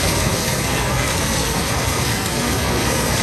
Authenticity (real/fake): fake